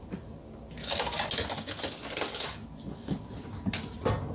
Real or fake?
real